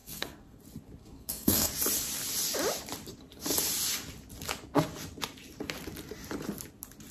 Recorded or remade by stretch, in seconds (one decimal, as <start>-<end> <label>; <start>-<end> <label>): 0.0-0.6 remade; 0.6-1.0 recorded; 1.0-1.7 remade; 1.7-7.1 recorded